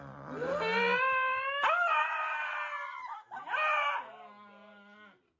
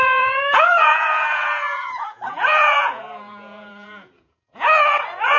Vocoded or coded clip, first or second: second